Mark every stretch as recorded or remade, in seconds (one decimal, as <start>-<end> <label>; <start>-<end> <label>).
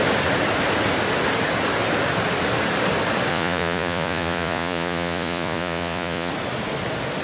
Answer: 0.0-3.3 recorded; 3.3-6.3 remade; 6.3-7.2 recorded